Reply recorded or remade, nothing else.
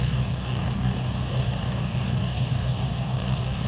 remade